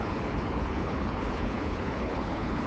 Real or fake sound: fake